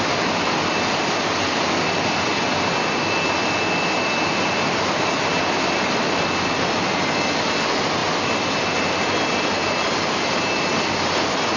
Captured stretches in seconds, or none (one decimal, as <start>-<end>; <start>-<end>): 0.0-11.6